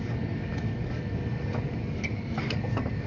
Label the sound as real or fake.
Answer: fake